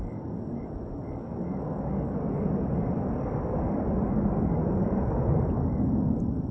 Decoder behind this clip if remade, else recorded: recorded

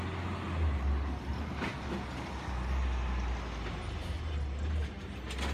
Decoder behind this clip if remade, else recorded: recorded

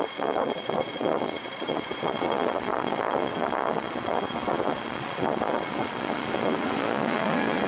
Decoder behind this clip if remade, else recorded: remade, vocoder, Vocos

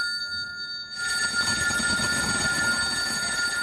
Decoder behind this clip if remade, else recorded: recorded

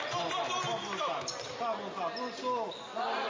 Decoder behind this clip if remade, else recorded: recorded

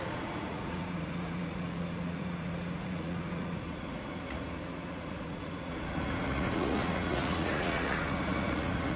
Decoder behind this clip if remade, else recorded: remade, vocoder, Vocos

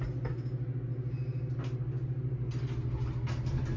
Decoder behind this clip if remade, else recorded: recorded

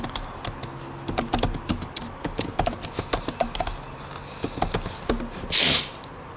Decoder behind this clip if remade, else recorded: recorded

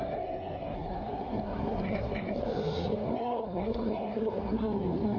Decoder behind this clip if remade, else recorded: remade, codec, SNAC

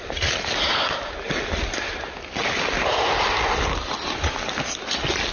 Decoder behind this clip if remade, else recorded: recorded